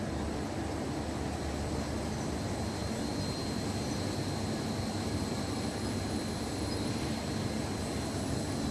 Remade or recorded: recorded